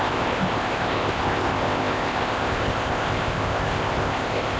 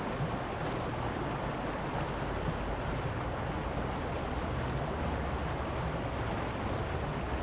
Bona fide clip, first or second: second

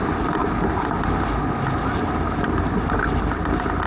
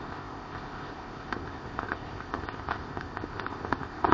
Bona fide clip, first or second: first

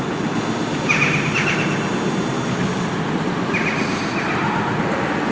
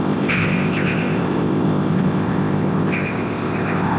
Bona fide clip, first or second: first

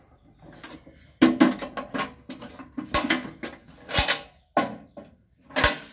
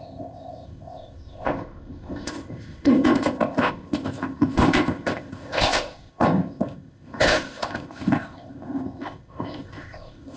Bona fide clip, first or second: first